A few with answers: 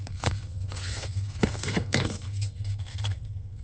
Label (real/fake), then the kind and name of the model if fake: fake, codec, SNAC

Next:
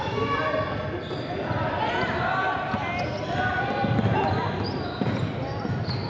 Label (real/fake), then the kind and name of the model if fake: real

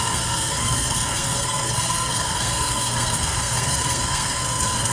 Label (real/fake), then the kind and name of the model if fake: fake, codec, SNAC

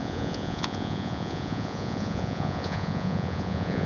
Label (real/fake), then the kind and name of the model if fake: fake, vocoder, Vocos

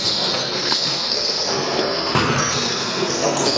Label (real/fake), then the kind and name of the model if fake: fake, codec, SNAC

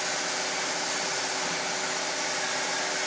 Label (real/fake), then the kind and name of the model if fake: real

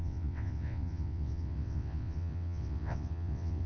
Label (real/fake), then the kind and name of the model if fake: fake, vocoder, WaveNeXt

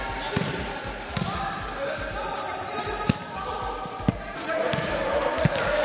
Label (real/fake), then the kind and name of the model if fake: real